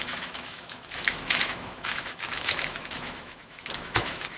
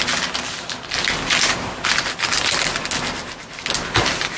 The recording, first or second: second